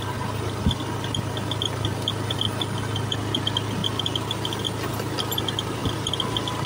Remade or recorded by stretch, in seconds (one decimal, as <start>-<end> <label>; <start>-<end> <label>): 0.0-6.7 recorded